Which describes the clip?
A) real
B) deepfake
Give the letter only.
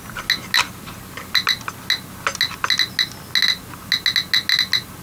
A